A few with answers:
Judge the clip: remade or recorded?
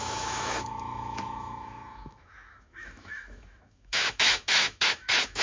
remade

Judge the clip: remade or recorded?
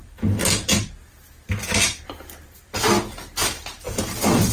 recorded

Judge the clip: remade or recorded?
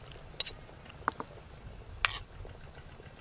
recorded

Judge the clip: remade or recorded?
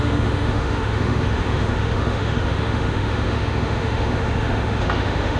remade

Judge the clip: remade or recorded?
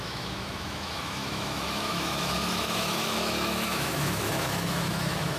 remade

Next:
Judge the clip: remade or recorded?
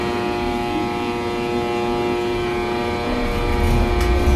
recorded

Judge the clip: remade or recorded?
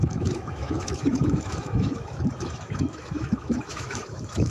remade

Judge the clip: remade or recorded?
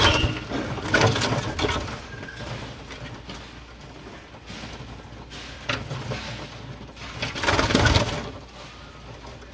recorded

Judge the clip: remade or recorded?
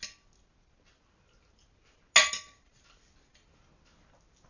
recorded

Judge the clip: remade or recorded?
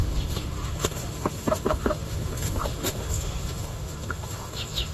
remade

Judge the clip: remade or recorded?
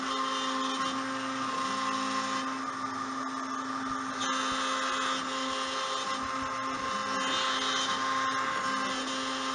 recorded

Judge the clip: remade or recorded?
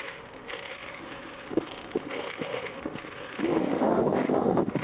remade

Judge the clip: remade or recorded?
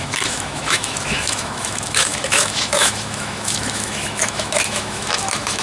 remade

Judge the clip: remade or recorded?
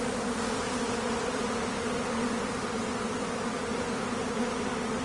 recorded